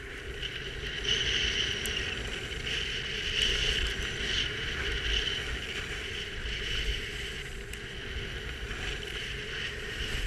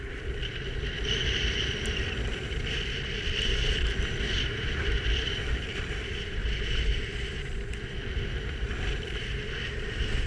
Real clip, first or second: first